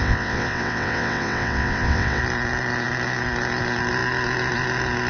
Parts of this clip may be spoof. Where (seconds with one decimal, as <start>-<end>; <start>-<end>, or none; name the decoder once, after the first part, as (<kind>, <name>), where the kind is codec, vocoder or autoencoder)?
0.0-2.2 (vocoder, WaveNeXt)